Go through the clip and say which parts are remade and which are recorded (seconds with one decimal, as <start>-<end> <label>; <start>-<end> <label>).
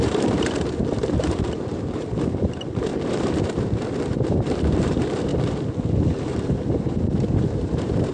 0.0-5.3 remade; 5.3-6.2 recorded; 6.2-8.1 remade